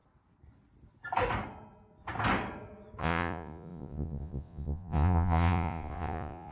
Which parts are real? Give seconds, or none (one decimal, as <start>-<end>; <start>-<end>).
0.0-3.0

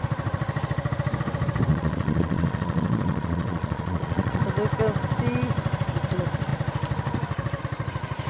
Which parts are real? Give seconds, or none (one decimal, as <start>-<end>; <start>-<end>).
0.0-1.7; 4.4-8.3

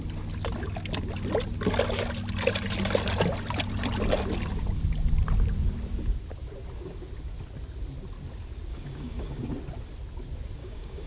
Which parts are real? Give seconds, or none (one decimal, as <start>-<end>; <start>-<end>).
0.0-8.7; 9.4-10.6

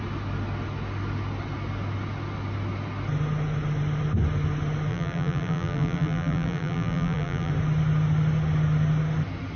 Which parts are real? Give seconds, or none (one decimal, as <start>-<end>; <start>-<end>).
0.0-4.9; 7.5-9.6